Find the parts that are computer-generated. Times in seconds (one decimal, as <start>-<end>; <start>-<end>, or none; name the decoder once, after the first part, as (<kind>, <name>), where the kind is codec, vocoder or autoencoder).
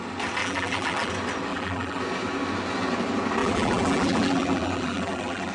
0.4-1.1 (vocoder, BigVGAN v2); 1.5-2.0; 3.4-5.5